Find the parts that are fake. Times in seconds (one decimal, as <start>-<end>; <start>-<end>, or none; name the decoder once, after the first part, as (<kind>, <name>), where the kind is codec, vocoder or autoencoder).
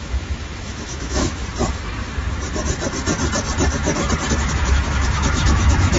0.0-1.4 (autoencoder, DAC-VAE); 4.3-6.0